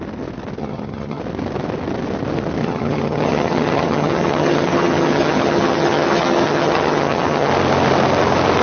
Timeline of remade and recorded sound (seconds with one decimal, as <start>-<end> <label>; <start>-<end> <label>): 0.0-0.6 recorded; 0.6-1.2 remade; 1.2-2.6 recorded; 2.6-7.5 remade; 7.5-8.6 recorded